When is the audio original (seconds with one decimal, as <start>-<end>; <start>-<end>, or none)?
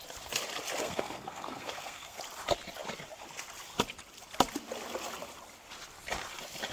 0.0-0.8; 2.2-6.7